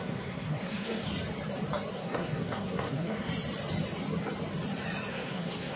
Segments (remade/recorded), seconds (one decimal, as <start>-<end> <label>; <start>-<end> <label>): 0.0-1.1 remade; 1.1-1.9 recorded; 1.9-3.3 remade; 3.3-5.1 recorded; 5.1-5.8 remade